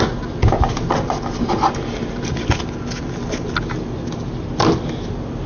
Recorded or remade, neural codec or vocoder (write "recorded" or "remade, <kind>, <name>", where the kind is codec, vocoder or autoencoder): recorded